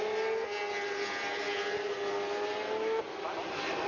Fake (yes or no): no